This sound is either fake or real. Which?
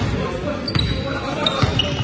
real